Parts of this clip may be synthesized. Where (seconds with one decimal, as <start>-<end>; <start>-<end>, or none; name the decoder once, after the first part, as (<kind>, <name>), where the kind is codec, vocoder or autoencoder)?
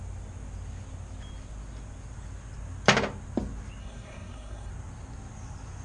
3.8-4.7 (codec, SNAC)